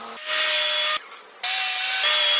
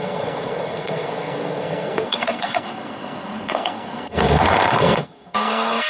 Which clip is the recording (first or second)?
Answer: first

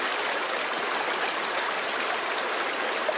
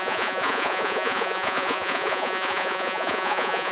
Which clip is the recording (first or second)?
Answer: first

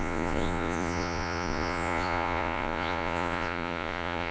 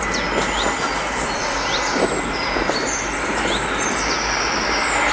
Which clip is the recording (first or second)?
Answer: second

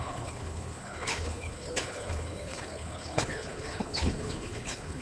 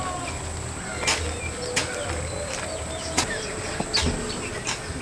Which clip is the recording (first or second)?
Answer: second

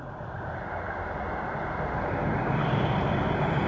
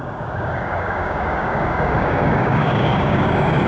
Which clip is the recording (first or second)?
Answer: first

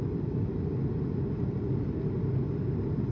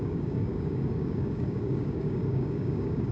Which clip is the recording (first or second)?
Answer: first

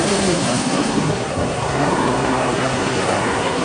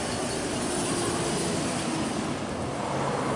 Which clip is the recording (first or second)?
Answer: second